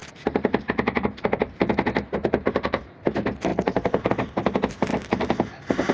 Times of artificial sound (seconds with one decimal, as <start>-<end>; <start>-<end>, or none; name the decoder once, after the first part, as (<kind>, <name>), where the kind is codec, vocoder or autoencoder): 0.0-1.7 (vocoder, BigVGAN v2); 2.2-2.9; 3.5-4.1; 4.9-5.5